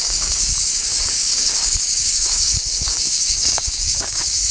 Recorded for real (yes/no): no